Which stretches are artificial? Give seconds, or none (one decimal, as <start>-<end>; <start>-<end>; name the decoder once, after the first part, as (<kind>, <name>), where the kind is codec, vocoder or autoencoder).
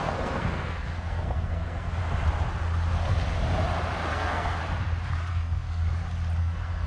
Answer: 0.0-2.0 (codec, SNAC); 4.1-4.6; 5.3-5.8; 6.4-6.9